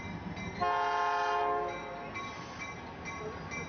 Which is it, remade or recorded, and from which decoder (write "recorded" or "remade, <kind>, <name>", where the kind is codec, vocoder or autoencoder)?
recorded